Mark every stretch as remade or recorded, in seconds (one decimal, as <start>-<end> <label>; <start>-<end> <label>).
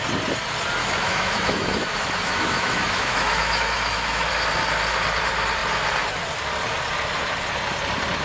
0.0-0.8 recorded; 0.8-4.3 remade; 4.3-8.2 recorded